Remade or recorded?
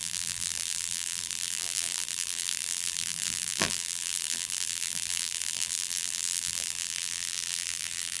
remade